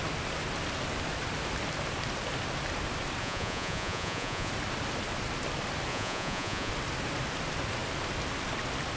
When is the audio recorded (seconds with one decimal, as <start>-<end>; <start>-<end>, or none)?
0.0-3.2; 4.5-5.9; 6.7-9.0